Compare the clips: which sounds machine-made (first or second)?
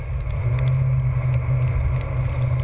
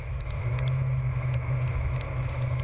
second